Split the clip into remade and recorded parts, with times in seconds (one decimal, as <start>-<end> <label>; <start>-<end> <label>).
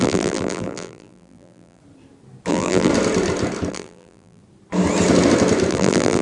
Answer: 0.0-1.8 remade; 1.8-2.5 recorded; 2.5-2.9 remade; 2.9-3.7 recorded; 3.7-4.4 remade; 4.4-5.7 recorded; 5.7-6.2 remade